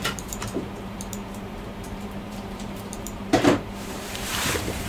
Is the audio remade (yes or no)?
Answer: yes